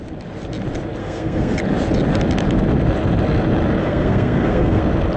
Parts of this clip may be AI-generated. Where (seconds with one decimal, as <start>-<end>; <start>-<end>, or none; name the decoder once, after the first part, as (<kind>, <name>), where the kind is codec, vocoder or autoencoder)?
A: 1.0-1.6 (codec, SNAC); 3.8-4.8